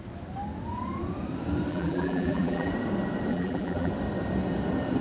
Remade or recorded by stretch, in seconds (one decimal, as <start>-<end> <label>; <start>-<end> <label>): 0.0-1.7 recorded; 1.7-2.7 remade; 2.7-3.3 recorded; 3.3-3.9 remade; 3.9-5.0 recorded